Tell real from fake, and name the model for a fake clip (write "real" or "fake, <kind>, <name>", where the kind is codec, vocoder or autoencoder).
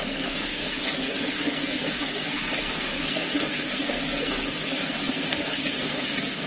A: fake, codec, SNAC